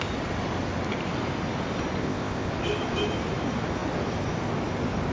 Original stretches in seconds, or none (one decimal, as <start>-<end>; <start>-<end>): 0.0-2.0; 2.5-5.1

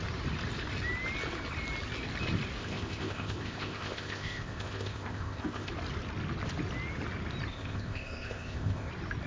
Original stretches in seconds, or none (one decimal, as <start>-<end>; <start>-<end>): 0.0-2.6; 5.7-7.5; 8.9-9.3

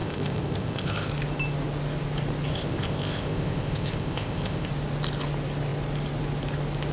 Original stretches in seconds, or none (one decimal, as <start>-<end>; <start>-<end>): 1.1-2.5; 4.7-6.9

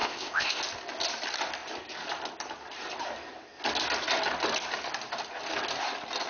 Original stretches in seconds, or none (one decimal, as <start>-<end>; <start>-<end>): 0.6-6.3

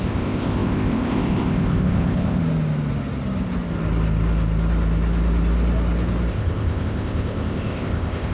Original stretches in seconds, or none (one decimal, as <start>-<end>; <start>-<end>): 2.4-6.3

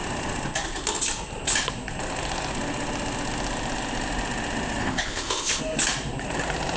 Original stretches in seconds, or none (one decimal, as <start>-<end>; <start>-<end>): 0.0-4.8; 5.6-6.8